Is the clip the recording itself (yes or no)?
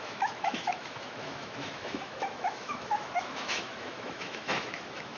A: no